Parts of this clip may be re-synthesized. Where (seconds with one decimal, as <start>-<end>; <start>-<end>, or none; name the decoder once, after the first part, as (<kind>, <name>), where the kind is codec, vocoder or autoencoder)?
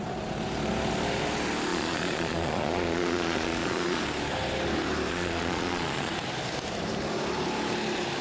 1.7-4.0 (vocoder, Vocos); 5.1-6.1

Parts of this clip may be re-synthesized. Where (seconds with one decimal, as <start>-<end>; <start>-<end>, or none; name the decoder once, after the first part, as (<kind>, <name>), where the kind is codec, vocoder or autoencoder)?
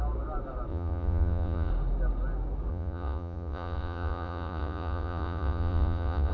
0.7-1.7 (vocoder, Vocos); 2.7-6.3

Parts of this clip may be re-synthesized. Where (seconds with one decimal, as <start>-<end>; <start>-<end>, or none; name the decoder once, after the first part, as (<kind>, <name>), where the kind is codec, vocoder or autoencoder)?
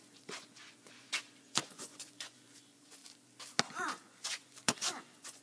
0.0-3.0 (vocoder, Vocos); 3.6-5.4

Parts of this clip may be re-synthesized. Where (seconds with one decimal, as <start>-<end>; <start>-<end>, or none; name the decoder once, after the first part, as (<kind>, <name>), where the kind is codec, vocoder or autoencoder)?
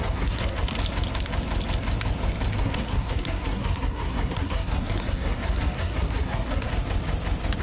0.0-0.7 (codec, SNAC); 2.6-6.7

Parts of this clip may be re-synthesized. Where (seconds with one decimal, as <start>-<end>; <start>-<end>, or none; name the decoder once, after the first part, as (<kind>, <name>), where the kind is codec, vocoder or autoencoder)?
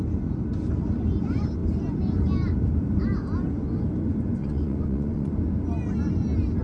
4.4-5.3 (vocoder, Vocos)